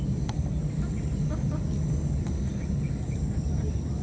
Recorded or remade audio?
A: recorded